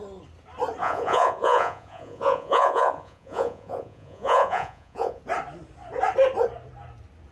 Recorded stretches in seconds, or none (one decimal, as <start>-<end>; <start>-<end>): 0.0-0.8; 5.2-7.3